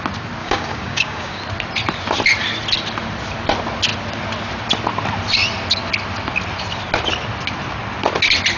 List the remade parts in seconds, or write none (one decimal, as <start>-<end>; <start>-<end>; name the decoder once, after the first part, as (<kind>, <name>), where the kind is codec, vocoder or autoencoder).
0.4-1.4 (codec, DAC)